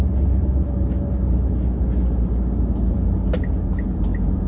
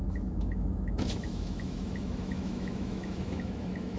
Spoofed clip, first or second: second